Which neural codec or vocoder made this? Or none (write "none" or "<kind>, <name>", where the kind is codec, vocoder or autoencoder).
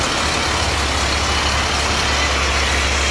none